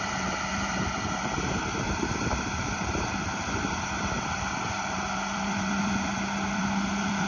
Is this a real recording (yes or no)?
no